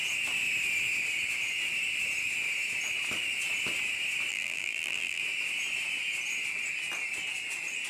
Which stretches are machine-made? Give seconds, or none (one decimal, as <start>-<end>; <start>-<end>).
4.3-5.2